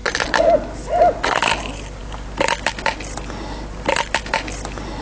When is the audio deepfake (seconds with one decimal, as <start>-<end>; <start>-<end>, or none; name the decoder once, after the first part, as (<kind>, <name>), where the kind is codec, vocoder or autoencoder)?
none